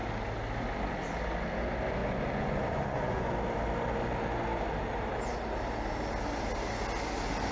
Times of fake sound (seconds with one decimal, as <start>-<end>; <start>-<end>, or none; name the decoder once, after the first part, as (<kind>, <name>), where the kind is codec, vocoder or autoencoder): 2.0-3.3 (vocoder, Vocos)